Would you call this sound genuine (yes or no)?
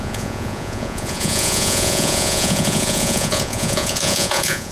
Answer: no